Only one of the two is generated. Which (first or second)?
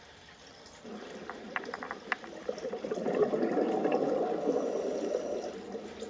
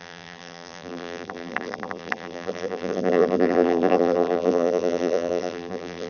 second